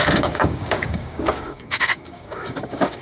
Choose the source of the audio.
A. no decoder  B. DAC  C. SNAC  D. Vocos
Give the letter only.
B